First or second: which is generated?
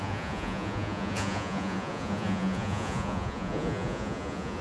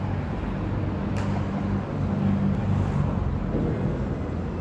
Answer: first